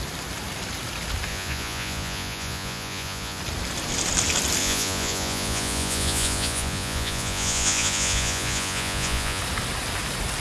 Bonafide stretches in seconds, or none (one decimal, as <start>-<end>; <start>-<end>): 0.0-1.3; 3.4-4.6; 9.4-10.4